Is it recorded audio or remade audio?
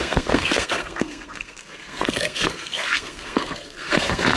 remade